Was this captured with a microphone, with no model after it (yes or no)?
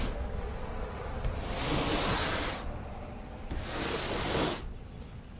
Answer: no